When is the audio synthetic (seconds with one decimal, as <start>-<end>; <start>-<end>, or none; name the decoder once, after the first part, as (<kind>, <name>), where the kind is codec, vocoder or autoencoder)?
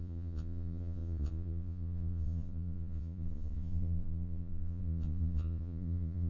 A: 0.0-6.3 (vocoder, Vocos)